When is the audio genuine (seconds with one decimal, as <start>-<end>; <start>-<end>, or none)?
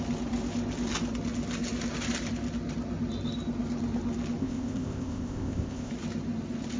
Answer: 0.0-4.4; 5.9-6.8